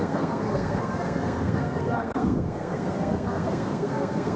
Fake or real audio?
fake